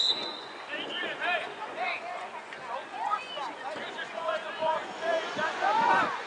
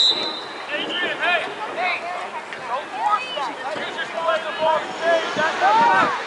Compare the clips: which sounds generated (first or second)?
first